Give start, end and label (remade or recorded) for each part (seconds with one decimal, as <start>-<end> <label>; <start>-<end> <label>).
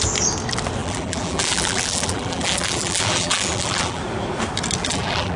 0.0-0.8 recorded; 0.8-4.0 remade; 4.0-4.8 recorded; 4.8-5.4 remade